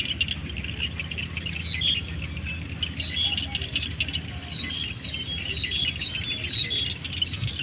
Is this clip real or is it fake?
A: real